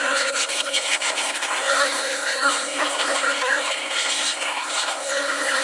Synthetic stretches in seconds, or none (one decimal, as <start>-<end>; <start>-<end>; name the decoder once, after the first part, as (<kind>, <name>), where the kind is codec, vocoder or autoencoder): 0.0-5.6 (codec, SNAC)